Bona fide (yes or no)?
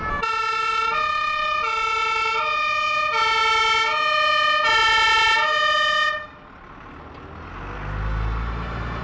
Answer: yes